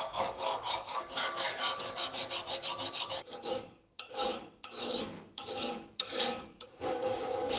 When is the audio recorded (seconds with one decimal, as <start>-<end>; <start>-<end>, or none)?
2.2-2.9